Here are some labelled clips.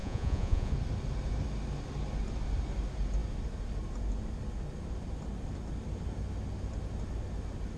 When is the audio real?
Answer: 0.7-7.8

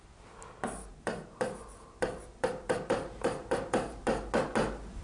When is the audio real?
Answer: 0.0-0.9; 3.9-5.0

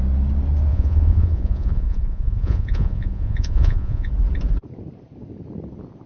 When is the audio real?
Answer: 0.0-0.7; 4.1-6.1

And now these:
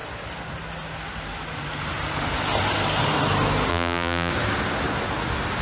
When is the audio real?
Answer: 0.0-3.7; 4.3-5.6

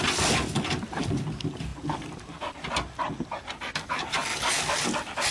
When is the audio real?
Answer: 0.0-5.3

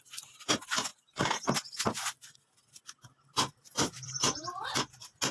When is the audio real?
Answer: 0.0-5.3